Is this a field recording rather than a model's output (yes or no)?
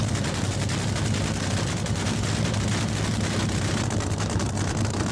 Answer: no